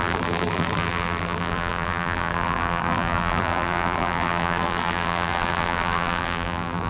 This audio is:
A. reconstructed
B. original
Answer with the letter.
A